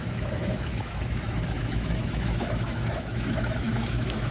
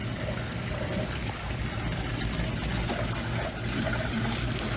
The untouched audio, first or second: second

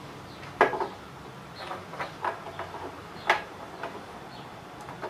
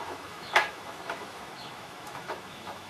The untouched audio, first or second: first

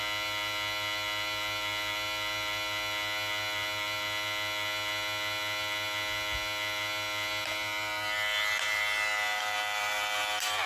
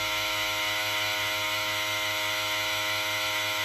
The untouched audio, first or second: first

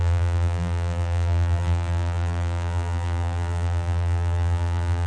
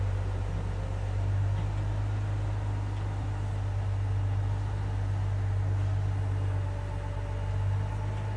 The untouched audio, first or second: second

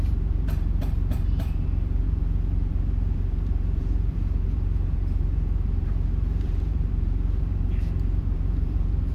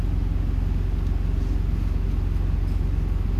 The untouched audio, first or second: second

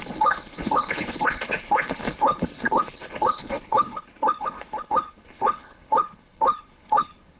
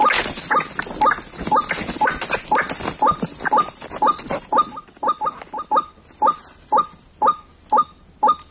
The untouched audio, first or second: second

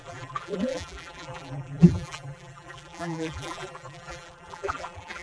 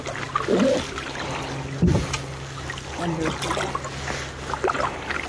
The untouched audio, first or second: second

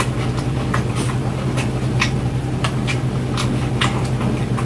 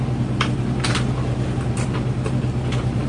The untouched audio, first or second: first